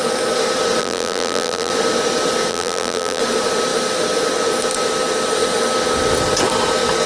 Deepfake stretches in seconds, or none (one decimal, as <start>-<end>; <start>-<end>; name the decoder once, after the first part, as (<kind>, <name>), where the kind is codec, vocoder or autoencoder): 0.8-1.7 (vocoder, BigVGAN v2); 2.5-3.2